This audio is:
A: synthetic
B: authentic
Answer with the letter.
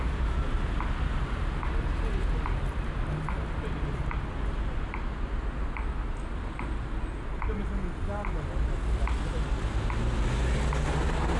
B